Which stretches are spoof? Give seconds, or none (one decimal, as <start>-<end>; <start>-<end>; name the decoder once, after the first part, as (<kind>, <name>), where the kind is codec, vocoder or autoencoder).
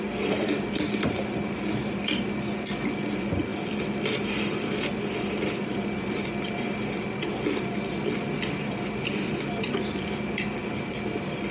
none